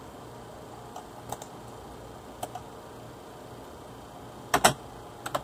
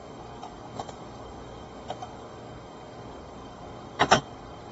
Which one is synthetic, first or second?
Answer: second